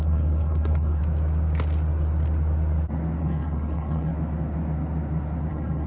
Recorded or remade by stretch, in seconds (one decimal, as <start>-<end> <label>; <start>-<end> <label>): 0.0-1.0 remade; 1.0-3.2 recorded; 3.2-4.1 remade; 4.1-5.5 recorded; 5.5-5.9 remade